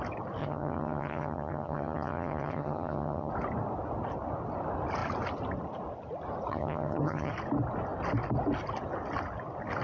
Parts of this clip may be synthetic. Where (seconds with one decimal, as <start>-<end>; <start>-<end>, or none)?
0.4-3.3; 6.5-7.3